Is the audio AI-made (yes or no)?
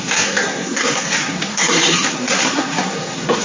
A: yes